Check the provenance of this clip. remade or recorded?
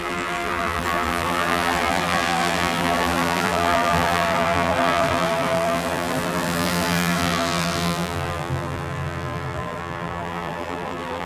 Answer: remade